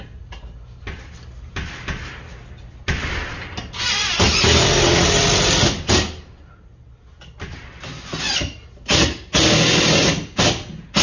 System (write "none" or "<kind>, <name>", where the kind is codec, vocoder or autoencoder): none